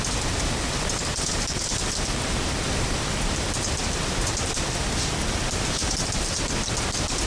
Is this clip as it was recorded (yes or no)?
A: no